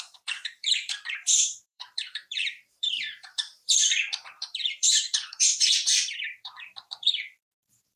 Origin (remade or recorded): remade